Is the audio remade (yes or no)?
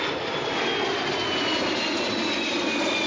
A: no